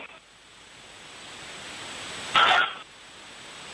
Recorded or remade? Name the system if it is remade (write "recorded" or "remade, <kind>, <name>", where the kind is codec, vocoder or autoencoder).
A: recorded